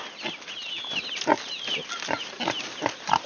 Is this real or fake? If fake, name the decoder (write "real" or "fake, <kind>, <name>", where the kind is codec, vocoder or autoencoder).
real